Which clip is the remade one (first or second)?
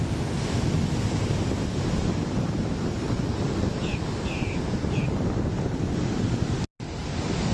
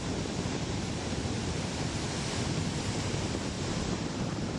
second